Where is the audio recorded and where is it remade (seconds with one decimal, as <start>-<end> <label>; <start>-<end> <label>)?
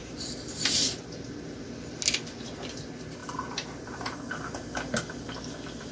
0.0-1.0 remade; 1.0-3.2 recorded; 3.2-4.3 remade; 4.3-5.9 recorded